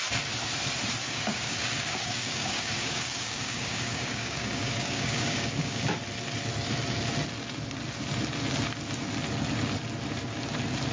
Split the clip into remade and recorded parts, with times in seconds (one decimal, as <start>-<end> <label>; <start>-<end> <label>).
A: 0.0-1.0 recorded; 1.0-5.8 remade; 5.8-10.9 recorded